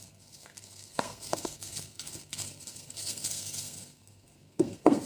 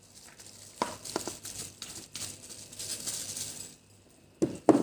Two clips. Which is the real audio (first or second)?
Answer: second